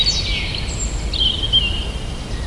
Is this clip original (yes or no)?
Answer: yes